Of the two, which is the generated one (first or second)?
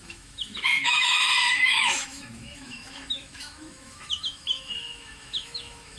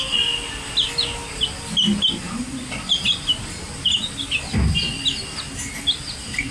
first